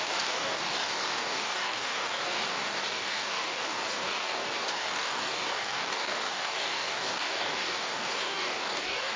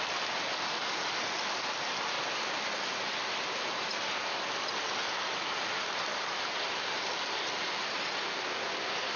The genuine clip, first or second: second